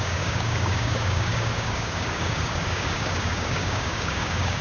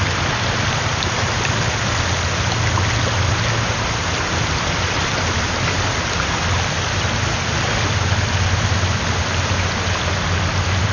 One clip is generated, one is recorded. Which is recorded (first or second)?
second